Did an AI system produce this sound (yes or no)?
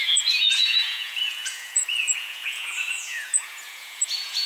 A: yes